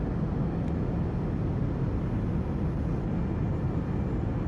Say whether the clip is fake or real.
real